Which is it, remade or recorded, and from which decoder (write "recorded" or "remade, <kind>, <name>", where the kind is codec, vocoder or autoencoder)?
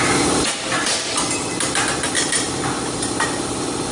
recorded